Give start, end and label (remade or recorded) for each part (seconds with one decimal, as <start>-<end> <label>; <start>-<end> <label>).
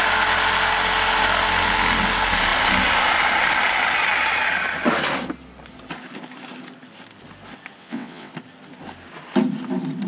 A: 0.0-7.8 recorded; 7.8-8.3 remade; 8.3-10.1 recorded